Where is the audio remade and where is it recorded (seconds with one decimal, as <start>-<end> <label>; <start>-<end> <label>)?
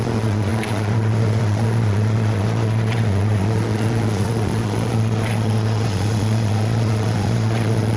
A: 0.0-8.0 remade